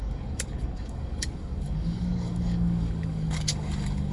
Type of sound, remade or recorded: remade